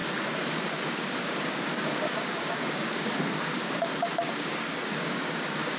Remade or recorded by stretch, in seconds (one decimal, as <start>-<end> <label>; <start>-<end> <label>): 0.0-0.5 recorded; 0.5-5.8 remade